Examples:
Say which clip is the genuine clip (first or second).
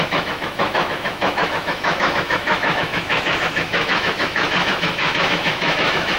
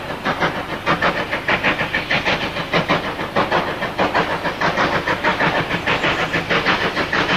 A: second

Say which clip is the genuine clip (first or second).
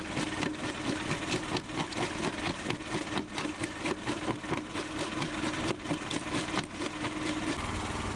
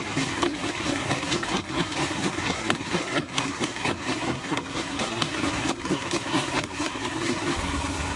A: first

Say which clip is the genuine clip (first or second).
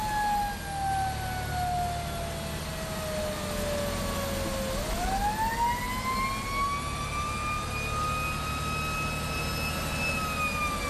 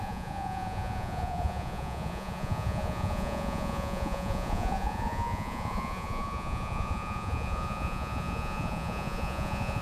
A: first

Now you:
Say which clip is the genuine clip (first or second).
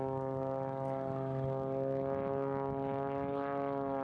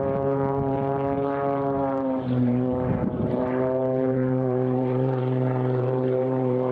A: first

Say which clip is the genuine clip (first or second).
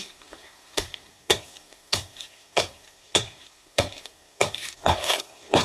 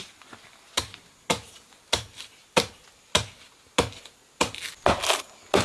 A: second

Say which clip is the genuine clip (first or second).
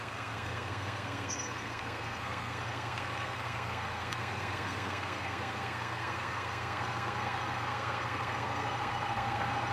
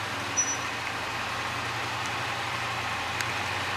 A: second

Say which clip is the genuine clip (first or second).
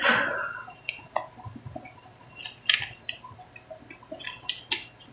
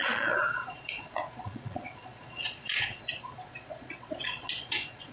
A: first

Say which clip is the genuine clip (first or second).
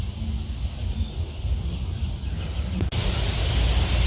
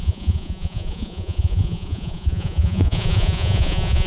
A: first